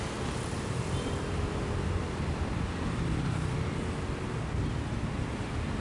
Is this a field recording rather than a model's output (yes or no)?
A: yes